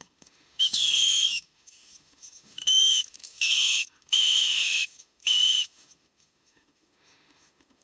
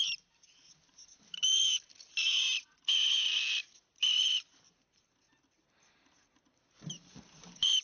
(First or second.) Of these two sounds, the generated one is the first